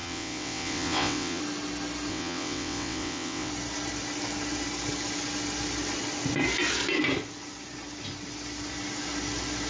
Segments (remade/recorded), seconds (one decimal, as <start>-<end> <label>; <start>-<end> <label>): 0.0-1.4 remade; 1.4-2.1 recorded; 2.1-3.5 remade; 3.5-9.7 recorded